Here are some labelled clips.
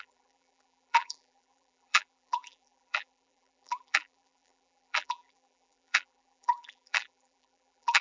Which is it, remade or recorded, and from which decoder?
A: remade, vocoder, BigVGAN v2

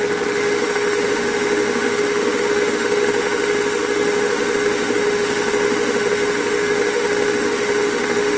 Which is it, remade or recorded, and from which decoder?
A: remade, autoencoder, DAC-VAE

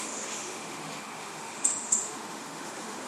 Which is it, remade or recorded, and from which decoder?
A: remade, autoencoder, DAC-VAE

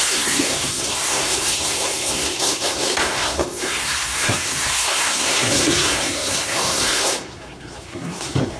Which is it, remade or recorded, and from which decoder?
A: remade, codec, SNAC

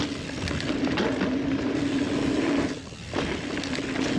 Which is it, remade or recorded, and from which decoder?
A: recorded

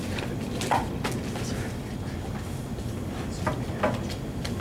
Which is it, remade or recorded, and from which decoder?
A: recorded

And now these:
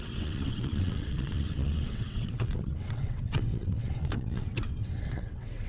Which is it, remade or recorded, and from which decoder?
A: remade, vocoder, WaveNeXt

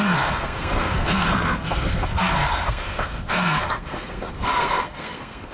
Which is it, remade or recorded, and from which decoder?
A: remade, codec, SNAC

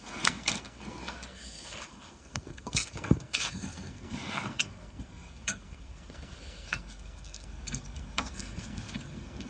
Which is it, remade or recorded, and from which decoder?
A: remade, codec, SNAC